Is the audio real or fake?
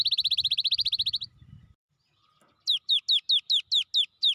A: real